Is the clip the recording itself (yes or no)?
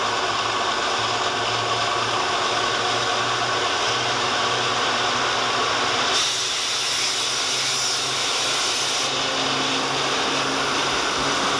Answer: yes